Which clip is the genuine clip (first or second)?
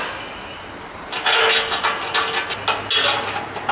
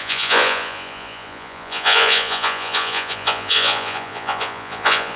first